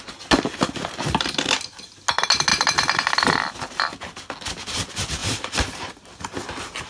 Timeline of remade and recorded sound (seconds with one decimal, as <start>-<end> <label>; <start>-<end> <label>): 0.0-5.2 recorded; 5.2-5.9 remade; 5.9-6.9 recorded